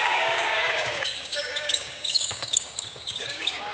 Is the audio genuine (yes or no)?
no